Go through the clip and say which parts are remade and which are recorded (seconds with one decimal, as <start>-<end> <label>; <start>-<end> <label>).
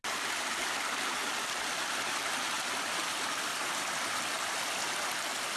0.0-1.2 recorded; 1.2-2.5 remade; 2.5-5.6 recorded